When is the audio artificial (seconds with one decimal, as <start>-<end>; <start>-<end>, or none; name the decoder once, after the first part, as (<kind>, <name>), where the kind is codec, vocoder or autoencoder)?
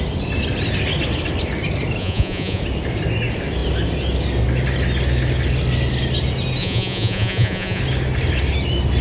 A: 2.0-2.6 (vocoder, Vocos); 6.6-7.8